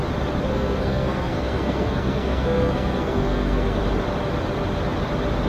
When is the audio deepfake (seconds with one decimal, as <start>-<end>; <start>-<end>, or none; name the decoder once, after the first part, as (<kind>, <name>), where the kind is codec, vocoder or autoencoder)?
0.5-3.8 (codec, SNAC)